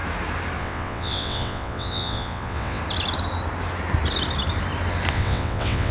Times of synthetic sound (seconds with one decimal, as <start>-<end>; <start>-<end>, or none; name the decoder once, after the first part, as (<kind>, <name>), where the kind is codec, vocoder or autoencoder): 0.6-2.8 (vocoder, WaveNeXt); 5.1-5.9